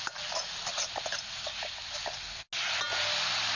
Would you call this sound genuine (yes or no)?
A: yes